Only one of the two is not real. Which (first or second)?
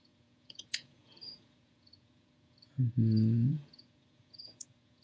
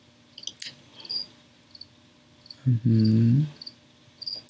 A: first